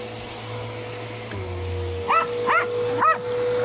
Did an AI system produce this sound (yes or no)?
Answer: no